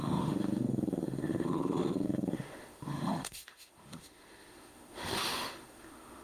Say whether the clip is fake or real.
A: fake